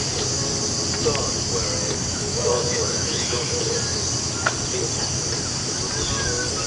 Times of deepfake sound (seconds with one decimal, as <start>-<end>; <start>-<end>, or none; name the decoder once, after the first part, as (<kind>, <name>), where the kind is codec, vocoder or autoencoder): 2.1-3.6 (autoencoder, DAC-VAE)

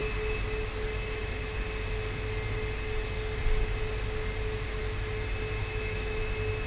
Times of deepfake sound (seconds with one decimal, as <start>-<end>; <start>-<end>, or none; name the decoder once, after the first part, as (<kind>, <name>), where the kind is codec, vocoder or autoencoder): 5.6-6.2 (autoencoder, DAC-VAE)

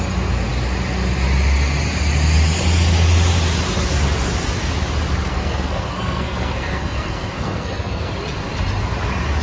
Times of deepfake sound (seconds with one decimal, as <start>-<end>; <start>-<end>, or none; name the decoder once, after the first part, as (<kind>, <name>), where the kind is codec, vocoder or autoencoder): 5.3-8.1 (codec, SNAC)

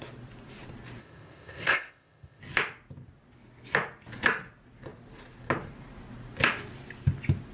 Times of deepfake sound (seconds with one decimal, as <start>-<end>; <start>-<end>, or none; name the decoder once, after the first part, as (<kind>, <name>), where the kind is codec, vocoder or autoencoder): 1.0-2.4 (codec, ZipCodec)

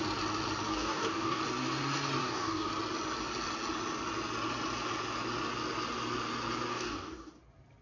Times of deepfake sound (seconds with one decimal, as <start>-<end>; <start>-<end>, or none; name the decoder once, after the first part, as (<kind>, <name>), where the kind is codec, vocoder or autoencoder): 0.7-1.4 (codec, DAC); 2.2-2.7; 6.7-7.3

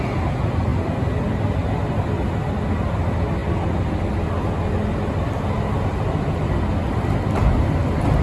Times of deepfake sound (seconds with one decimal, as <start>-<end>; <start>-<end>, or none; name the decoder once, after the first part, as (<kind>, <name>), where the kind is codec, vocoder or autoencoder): none

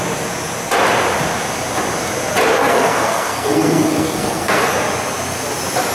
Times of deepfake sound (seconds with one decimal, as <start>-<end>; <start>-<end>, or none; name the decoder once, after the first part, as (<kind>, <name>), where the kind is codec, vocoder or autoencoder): 2.6-4.7 (codec, SNAC)